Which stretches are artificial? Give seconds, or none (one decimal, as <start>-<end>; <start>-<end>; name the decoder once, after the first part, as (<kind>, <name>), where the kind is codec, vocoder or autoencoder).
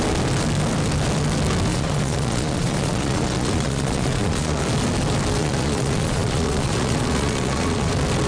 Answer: 1.7-4.6 (vocoder, Vocos); 5.4-7.9